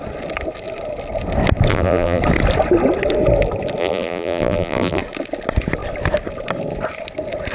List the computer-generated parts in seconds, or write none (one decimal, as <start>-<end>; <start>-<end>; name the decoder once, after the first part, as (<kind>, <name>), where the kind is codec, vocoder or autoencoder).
1.7-2.2 (vocoder, BigVGAN v2); 3.8-5.0